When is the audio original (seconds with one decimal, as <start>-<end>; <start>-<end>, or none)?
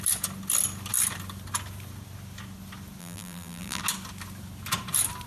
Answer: 0.0-3.0; 3.8-5.3